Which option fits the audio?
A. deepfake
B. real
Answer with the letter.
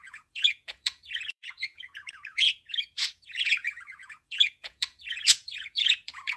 A